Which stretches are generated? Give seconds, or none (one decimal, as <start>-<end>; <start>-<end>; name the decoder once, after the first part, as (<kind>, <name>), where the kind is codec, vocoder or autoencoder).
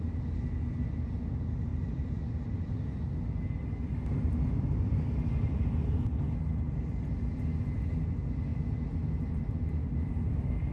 1.7-2.2 (vocoder, BigVGAN v2)